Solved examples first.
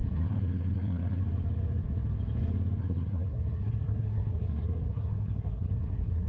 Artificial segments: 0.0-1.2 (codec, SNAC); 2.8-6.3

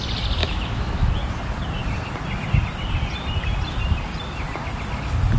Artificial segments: 0.4-1.1 (autoencoder, DAC-VAE)

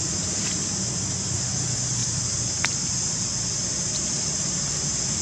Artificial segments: 2.0-5.2 (vocoder, BigVGAN v2)

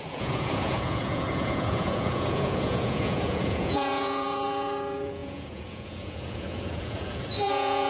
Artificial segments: 0.0-7.9 (vocoder, Vocos)

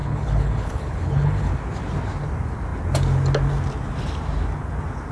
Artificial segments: 0.0-1.5 (codec, HILCodec)

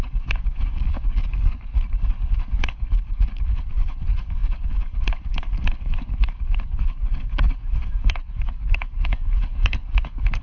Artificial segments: 0.0-10.4 (codec, DAC)

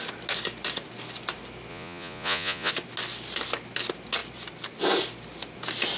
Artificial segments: 1.7-2.7 (vocoder, Vocos)

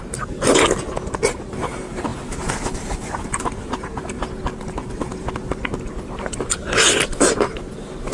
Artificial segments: none